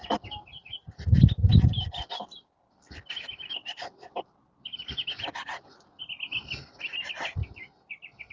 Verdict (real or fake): real